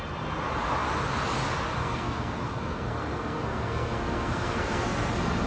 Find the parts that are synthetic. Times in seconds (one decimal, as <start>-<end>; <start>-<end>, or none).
1.8-5.1